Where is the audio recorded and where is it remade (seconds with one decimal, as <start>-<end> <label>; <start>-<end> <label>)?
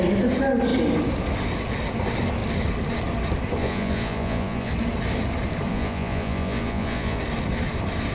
0.0-3.6 recorded; 3.6-4.7 remade; 4.7-5.7 recorded; 5.7-7.2 remade; 7.2-8.1 recorded